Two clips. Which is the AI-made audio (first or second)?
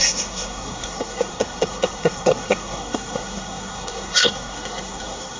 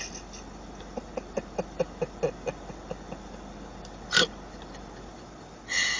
first